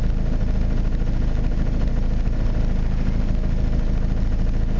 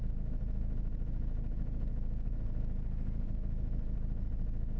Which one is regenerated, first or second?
second